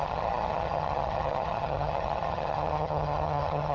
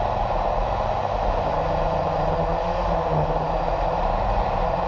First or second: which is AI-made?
first